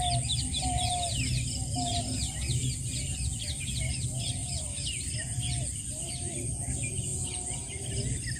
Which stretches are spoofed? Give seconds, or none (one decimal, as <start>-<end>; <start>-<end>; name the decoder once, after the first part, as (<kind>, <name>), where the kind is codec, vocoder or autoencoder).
none